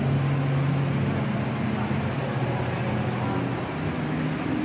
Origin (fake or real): real